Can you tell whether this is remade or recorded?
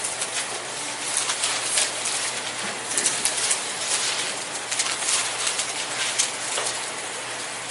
recorded